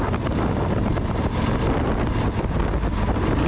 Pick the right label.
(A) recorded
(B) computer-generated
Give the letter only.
A